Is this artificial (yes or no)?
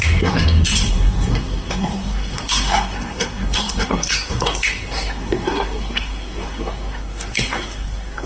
yes